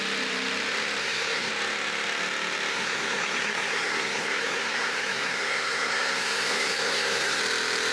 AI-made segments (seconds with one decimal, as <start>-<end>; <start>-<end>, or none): 1.0-1.5; 2.7-7.4

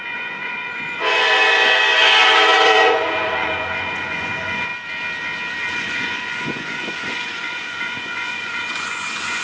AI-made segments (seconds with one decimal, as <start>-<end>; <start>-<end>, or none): 0.0-4.7; 5.7-9.4